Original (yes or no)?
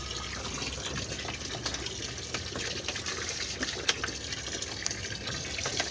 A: yes